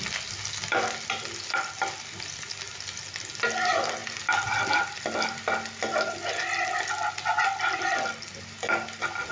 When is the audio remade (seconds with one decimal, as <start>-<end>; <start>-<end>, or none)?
none